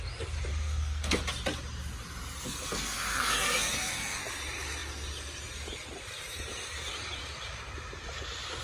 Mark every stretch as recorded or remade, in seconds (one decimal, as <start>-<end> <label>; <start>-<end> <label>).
0.0-0.5 recorded; 0.5-1.2 remade; 1.2-2.4 recorded; 2.4-4.2 remade; 4.2-8.6 recorded